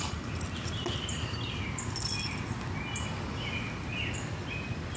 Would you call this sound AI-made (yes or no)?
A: no